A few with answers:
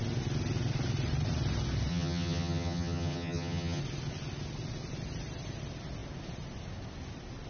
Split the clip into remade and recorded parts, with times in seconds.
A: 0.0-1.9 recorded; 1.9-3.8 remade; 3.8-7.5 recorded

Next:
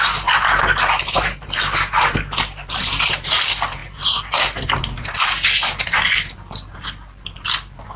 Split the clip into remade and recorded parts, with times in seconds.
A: 0.0-8.0 recorded

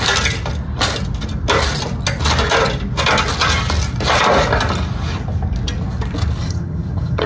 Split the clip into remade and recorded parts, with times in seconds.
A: 0.0-6.4 recorded; 6.4-7.3 remade